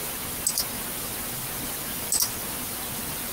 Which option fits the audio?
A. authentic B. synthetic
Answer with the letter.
A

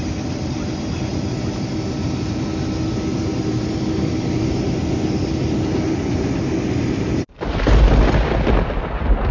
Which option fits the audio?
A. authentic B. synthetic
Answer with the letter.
A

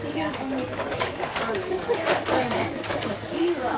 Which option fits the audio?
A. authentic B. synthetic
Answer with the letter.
B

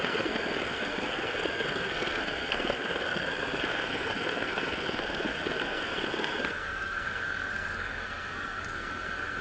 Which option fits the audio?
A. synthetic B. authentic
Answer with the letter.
A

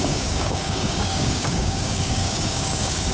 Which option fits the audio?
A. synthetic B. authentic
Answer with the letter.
A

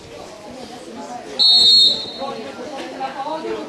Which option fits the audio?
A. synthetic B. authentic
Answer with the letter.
B